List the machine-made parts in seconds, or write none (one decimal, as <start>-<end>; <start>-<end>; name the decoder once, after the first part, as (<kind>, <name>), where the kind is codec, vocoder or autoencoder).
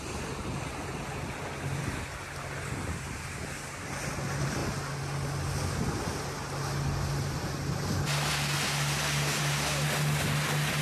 none